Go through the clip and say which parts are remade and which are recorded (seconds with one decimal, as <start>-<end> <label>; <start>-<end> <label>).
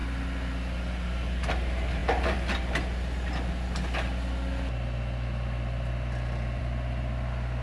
0.0-7.6 recorded